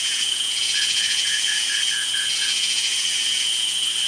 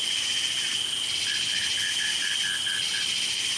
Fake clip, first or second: first